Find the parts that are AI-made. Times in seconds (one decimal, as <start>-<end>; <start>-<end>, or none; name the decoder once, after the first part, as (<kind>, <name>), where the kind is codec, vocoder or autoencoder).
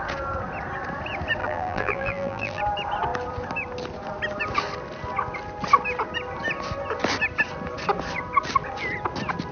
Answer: 1.4-2.6 (vocoder, BigVGAN v2)